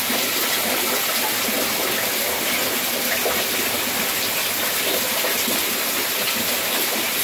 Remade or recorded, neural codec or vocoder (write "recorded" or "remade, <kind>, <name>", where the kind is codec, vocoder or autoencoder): recorded